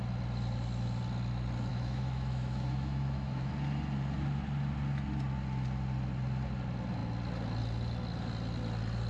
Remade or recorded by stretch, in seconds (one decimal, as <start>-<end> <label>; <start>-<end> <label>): 0.0-1.7 recorded; 1.7-3.5 remade; 3.5-9.1 recorded